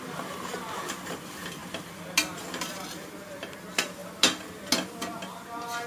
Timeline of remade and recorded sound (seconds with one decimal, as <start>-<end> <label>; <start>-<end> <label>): 0.0-0.5 remade; 0.5-1.1 recorded; 1.1-1.6 remade; 1.6-3.6 recorded; 3.6-4.0 remade; 4.0-5.9 recorded